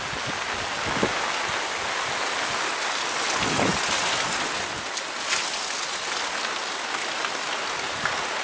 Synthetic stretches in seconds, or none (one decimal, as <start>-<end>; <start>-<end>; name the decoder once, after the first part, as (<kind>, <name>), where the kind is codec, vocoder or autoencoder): none